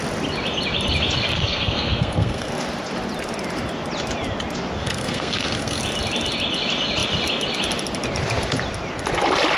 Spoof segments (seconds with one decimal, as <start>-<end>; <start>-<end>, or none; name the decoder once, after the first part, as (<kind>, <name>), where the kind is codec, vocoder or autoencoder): 1.3-2.5 (codec, SNAC); 4.8-5.8